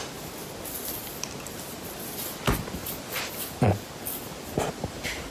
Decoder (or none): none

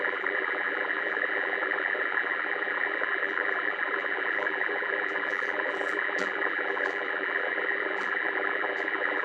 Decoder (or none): vocoder, BigVGAN v2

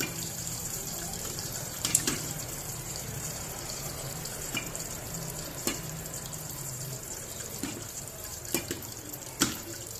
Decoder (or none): vocoder, BigVGAN v2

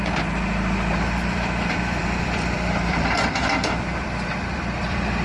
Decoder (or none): vocoder, BigVGAN v2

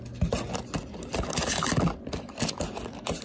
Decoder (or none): none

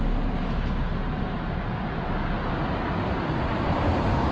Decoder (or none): none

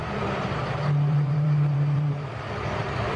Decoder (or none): vocoder, BigVGAN v2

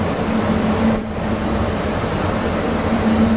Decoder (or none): vocoder, BigVGAN v2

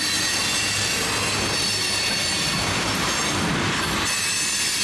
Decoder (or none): none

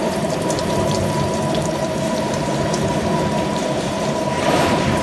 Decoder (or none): vocoder, BigVGAN v2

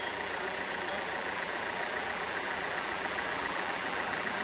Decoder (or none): vocoder, BigVGAN v2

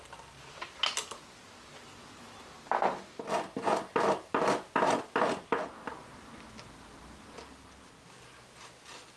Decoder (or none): none